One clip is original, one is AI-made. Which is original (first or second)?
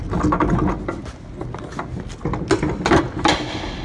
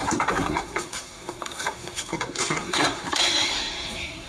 first